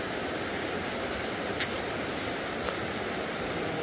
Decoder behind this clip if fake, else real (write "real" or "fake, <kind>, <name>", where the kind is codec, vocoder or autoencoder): real